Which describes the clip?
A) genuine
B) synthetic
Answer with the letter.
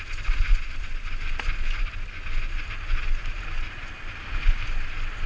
A